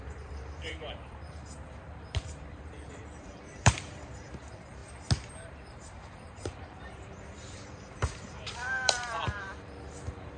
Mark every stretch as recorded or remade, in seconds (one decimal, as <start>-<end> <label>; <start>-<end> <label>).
0.0-4.8 remade; 4.8-5.3 recorded; 5.3-10.4 remade